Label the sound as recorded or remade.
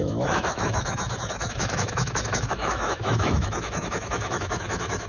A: remade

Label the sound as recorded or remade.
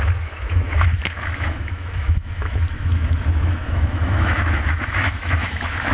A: remade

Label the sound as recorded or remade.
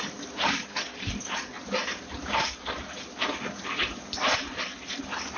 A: recorded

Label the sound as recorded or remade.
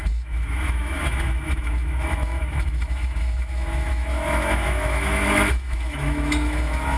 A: remade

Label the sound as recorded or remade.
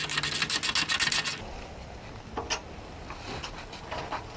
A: recorded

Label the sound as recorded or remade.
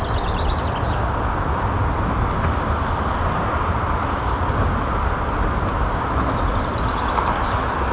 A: recorded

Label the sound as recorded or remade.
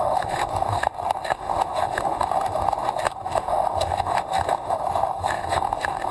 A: remade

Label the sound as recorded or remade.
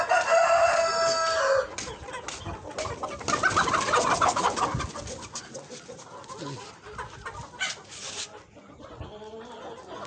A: recorded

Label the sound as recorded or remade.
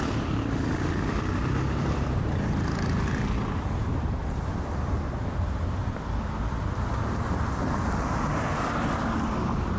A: recorded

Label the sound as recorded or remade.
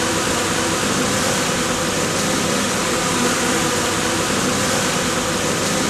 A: recorded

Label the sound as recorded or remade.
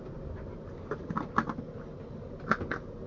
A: recorded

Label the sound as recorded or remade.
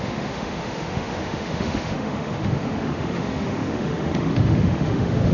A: remade